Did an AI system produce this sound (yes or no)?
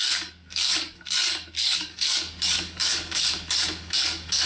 yes